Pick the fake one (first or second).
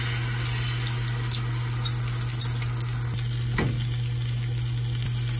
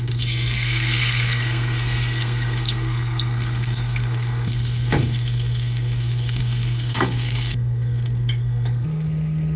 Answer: second